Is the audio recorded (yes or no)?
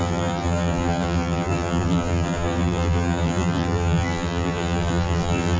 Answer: no